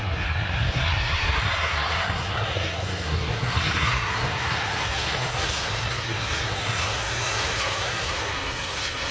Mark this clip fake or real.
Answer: fake